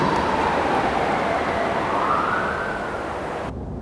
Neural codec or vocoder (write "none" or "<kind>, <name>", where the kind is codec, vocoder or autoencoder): none